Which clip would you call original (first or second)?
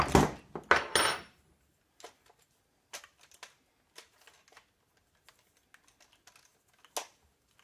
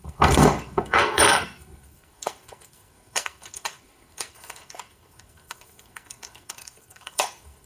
first